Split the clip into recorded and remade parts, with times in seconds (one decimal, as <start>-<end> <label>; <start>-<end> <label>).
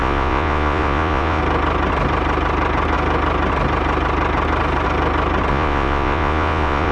0.0-1.4 remade; 1.4-5.5 recorded; 5.5-6.9 remade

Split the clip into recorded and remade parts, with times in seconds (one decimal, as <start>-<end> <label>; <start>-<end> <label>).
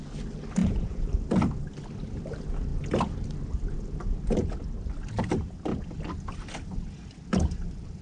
0.0-0.6 recorded; 0.6-1.1 remade; 1.1-8.0 recorded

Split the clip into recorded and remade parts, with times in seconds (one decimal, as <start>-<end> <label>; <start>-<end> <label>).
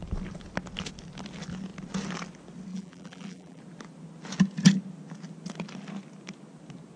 0.0-2.7 recorded; 2.7-3.6 remade; 3.6-7.0 recorded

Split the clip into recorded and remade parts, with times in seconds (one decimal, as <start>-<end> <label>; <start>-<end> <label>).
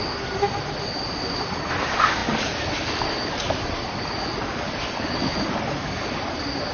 0.0-6.7 recorded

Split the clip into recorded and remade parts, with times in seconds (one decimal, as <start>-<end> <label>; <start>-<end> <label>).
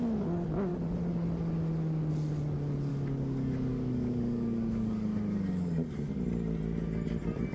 0.0-2.9 recorded; 2.9-6.2 remade; 6.2-7.5 recorded